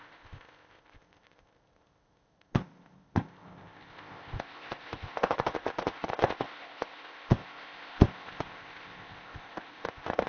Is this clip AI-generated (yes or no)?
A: yes